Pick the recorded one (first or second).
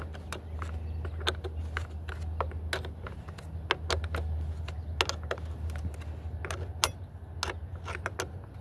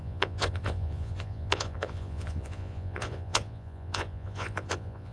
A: first